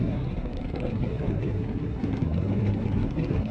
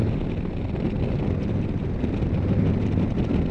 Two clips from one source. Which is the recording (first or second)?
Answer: second